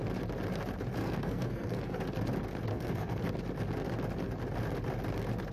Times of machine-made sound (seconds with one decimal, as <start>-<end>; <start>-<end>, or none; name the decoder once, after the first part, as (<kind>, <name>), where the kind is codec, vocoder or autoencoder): 1.0-2.0 (codec, SNAC); 2.7-3.2